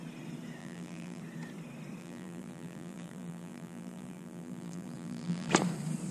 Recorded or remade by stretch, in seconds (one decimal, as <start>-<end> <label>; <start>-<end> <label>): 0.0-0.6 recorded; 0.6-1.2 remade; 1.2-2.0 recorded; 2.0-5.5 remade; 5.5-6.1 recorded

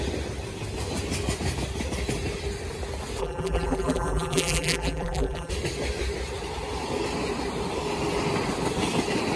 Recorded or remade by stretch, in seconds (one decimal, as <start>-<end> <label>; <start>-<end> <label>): 0.0-3.2 recorded; 3.2-5.5 remade; 5.5-9.4 recorded

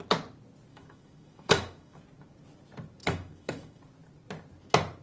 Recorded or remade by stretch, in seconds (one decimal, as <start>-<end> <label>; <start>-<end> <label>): 0.0-0.7 recorded; 0.7-2.0 remade; 2.0-3.0 recorded; 3.0-3.8 remade; 3.8-5.0 recorded

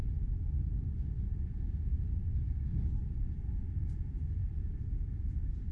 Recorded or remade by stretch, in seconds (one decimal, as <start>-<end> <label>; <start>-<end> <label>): 0.0-1.9 recorded; 1.9-5.3 remade; 5.3-5.7 recorded

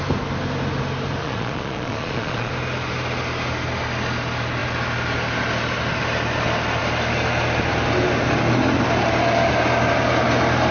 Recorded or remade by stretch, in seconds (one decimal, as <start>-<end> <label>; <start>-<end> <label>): 0.0-1.2 recorded; 1.2-2.5 remade; 2.5-10.7 recorded

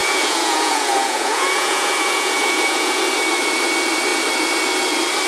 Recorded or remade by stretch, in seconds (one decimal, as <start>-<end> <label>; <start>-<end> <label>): 0.0-3.0 remade; 3.0-5.3 recorded

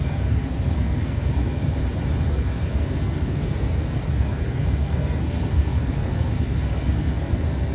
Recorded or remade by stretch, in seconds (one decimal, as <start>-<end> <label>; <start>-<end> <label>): 0.0-1.8 remade; 1.8-2.3 recorded; 2.3-7.7 remade

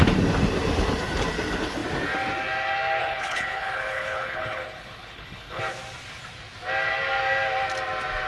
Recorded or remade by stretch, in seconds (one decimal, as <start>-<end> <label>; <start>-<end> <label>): 0.0-3.0 recorded; 3.0-5.6 remade; 5.6-8.3 recorded